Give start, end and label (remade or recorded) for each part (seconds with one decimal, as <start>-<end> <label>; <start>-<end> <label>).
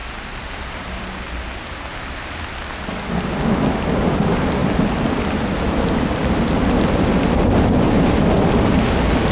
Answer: 0.0-9.3 recorded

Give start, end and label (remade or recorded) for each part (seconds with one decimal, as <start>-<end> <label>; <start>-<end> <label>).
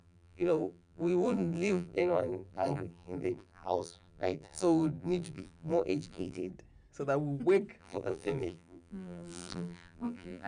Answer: 0.0-6.5 remade; 6.5-7.8 recorded; 7.8-10.5 remade